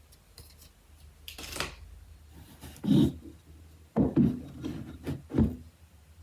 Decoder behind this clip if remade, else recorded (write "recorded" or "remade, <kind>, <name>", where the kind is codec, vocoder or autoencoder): recorded